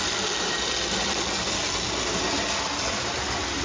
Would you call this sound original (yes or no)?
yes